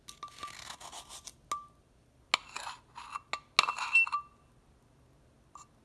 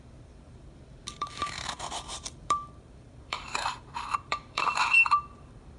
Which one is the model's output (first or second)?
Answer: second